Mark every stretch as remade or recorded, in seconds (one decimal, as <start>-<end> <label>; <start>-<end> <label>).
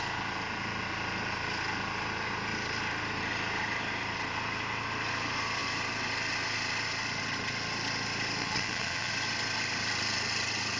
0.0-8.4 recorded; 8.4-9.1 remade; 9.1-10.8 recorded